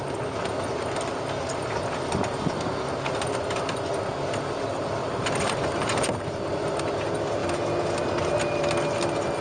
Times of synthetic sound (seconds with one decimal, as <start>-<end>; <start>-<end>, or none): 5.0-6.8